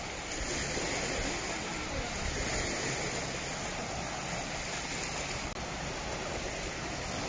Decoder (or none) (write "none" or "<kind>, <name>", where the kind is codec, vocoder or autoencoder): none